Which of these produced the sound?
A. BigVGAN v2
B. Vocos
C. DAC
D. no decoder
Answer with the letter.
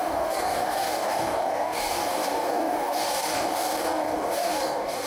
C